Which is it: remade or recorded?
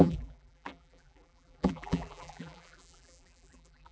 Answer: remade